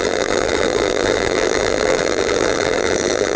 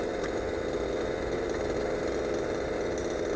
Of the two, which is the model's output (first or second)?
first